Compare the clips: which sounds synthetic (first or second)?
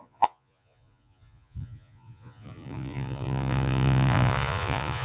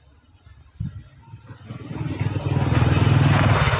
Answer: first